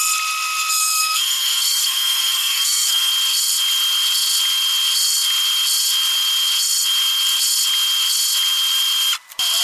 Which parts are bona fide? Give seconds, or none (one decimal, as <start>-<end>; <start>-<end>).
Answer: 0.0-0.7; 3.1-9.6